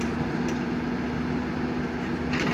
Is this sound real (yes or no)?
yes